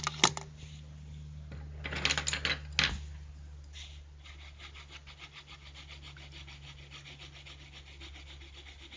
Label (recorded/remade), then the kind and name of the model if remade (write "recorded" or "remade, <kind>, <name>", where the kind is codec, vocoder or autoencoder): recorded